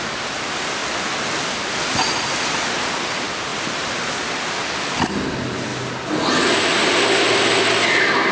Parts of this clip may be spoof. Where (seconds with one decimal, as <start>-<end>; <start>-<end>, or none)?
none